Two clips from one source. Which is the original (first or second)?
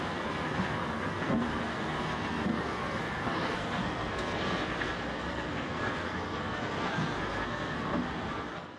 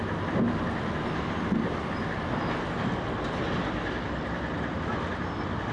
second